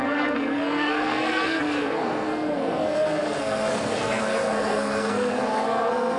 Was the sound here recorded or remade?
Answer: remade